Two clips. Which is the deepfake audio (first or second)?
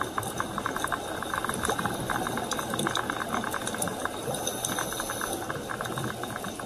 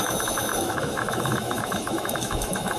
second